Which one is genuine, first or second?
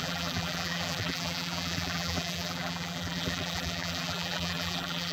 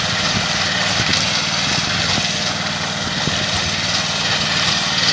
second